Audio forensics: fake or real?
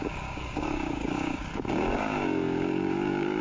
fake